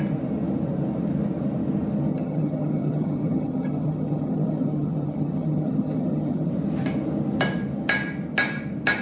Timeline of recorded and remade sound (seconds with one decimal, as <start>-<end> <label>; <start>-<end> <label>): 0.0-2.1 recorded; 2.1-6.5 remade; 6.5-9.0 recorded